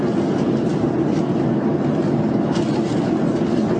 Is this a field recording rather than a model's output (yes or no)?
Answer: yes